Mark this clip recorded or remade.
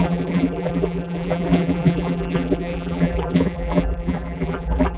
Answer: remade